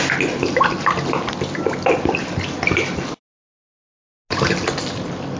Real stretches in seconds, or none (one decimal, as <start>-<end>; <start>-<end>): 0.0-5.4